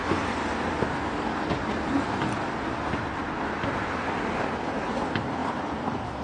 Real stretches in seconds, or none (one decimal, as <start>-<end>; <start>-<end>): 3.2-5.4